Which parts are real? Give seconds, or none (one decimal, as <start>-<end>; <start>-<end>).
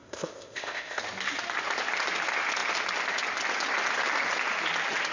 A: 1.0-5.1